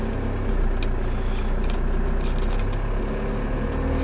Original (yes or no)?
yes